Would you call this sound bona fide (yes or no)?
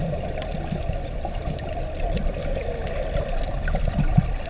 yes